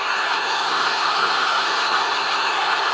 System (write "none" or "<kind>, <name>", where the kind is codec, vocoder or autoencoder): codec, SNAC